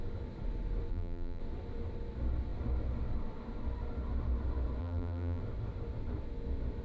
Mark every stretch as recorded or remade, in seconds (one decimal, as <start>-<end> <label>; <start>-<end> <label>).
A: 0.0-0.9 recorded; 0.9-1.4 remade; 1.4-4.8 recorded; 4.8-5.4 remade; 5.4-6.8 recorded